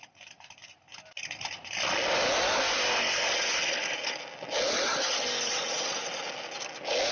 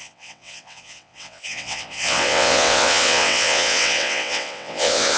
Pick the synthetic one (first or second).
second